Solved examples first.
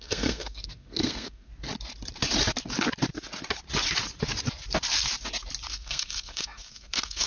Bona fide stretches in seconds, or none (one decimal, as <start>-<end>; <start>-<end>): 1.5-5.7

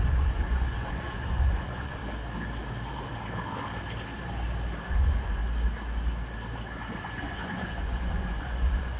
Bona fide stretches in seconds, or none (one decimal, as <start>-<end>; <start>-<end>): 2.0-4.9; 5.4-7.0

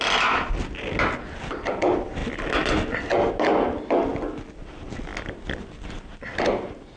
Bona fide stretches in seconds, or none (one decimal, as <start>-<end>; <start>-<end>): 0.0-7.0

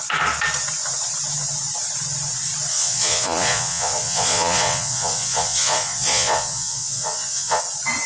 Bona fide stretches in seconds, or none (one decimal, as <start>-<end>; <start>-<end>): 0.0-2.7; 7.6-8.1